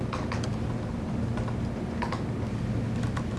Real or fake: real